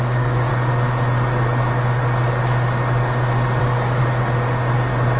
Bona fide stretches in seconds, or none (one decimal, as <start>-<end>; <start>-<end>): 0.5-3.6; 4.0-5.2